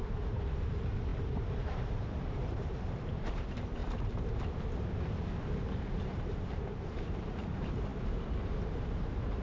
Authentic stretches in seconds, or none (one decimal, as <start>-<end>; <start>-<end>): 3.8-6.0